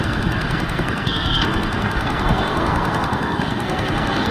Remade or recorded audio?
remade